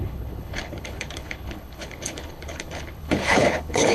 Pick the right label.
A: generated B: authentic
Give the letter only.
A